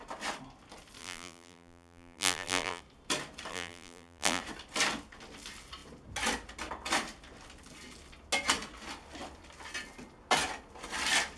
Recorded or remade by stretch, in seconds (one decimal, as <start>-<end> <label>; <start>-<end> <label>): 0.0-1.0 recorded; 1.0-2.8 remade; 2.8-3.5 recorded; 3.5-4.4 remade; 4.4-11.4 recorded